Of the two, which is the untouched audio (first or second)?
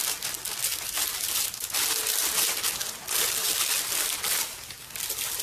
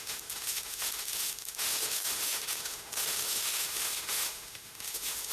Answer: first